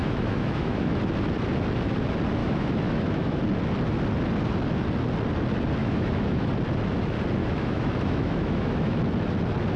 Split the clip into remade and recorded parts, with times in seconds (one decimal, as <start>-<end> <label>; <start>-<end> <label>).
0.0-1.0 remade; 1.0-2.4 recorded; 2.4-3.4 remade; 3.4-5.8 recorded; 5.8-6.5 remade; 6.5-7.4 recorded; 7.4-9.0 remade; 9.0-9.8 recorded

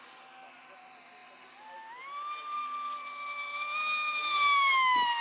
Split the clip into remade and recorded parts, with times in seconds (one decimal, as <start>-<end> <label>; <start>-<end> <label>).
0.0-5.2 recorded